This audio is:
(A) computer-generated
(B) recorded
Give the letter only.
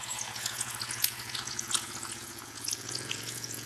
A